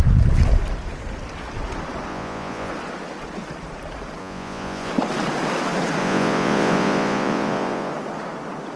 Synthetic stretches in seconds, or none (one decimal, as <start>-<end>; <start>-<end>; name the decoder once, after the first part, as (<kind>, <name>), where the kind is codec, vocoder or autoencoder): 2.1-2.7 (vocoder, Vocos); 4.2-4.9; 6.0-7.9

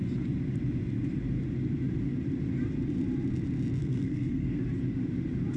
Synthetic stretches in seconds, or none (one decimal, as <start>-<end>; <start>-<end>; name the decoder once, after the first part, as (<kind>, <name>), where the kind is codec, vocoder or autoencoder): 3.8-4.6 (codec, SNAC)

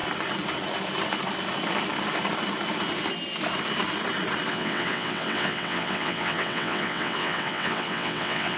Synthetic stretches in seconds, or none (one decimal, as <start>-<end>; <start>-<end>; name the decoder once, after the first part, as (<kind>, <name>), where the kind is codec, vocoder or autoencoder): 4.5-8.6 (vocoder, WaveNeXt)

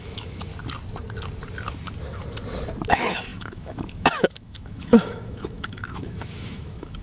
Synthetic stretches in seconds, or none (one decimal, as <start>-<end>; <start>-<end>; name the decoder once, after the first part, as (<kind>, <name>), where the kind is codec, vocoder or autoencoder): 0.0-0.5 (autoencoder, DAC-VAE); 2.9-7.0

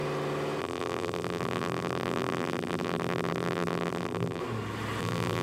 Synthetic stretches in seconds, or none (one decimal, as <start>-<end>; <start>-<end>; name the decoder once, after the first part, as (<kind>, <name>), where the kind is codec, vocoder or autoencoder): 0.6-4.4 (vocoder, BigVGAN v2); 5.0-5.4